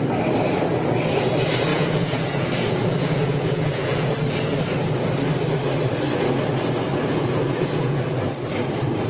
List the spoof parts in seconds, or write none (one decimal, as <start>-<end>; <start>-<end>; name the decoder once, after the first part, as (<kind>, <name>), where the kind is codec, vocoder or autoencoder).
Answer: 1.7-4.1 (vocoder, Vocos); 7.1-8.0